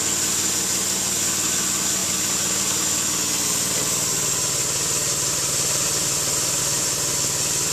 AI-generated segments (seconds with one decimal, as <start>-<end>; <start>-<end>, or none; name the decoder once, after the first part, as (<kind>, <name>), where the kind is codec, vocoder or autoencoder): none